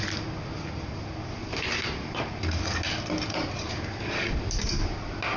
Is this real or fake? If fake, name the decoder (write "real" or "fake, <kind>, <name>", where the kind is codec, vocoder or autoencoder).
real